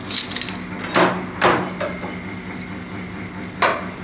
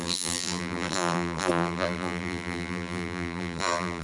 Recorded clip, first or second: first